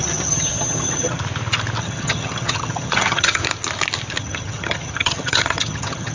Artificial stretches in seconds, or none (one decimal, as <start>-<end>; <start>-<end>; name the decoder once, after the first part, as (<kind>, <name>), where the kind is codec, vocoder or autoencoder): 0.0-1.2 (vocoder, HiFi-GAN); 1.8-3.4; 4.2-6.1